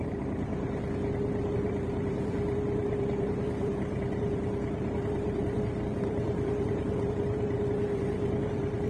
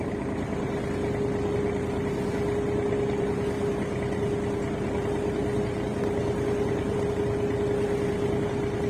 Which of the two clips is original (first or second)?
second